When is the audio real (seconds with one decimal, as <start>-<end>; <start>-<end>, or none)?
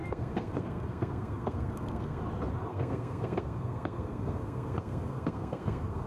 2.2-2.7